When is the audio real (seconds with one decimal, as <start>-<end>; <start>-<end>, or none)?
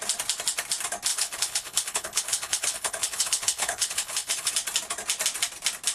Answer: 0.0-1.1; 4.5-5.9